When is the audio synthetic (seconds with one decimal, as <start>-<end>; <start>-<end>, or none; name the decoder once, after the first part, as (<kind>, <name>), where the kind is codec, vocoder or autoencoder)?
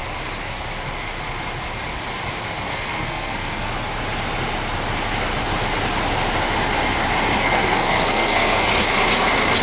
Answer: 2.7-3.7 (codec, SNAC); 7.4-8.7